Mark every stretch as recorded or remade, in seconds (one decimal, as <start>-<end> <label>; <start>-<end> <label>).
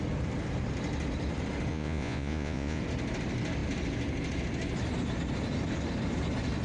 0.0-1.7 recorded; 1.7-2.8 remade; 2.8-6.6 recorded